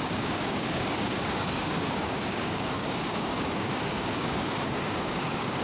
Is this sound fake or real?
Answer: fake